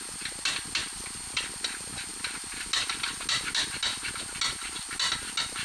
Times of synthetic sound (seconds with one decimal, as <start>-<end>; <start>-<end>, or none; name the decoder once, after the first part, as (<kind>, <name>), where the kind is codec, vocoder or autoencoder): none